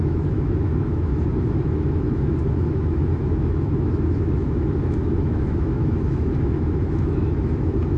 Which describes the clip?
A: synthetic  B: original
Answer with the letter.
A